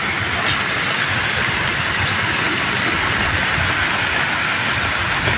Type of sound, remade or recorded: recorded